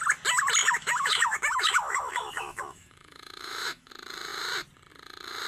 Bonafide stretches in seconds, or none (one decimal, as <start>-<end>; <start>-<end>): 0.0-0.6; 3.9-5.5